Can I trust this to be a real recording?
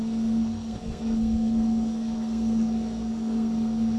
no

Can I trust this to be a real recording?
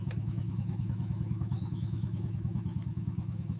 no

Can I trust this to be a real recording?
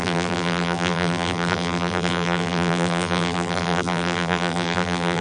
no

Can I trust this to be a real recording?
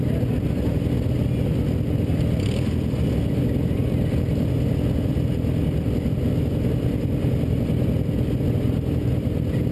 yes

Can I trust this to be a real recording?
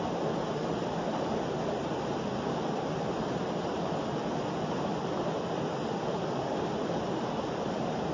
yes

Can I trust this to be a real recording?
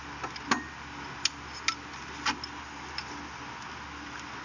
yes